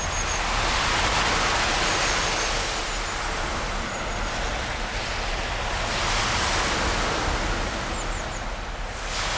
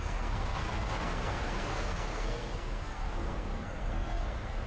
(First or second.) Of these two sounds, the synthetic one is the second